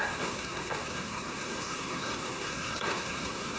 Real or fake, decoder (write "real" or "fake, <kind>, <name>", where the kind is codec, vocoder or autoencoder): fake, codec, SNAC